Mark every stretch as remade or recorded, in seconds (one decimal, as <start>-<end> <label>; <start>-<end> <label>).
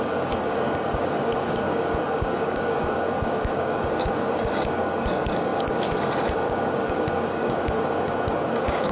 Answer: 0.0-8.9 remade